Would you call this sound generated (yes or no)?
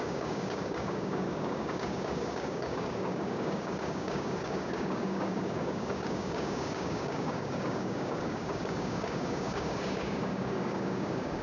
yes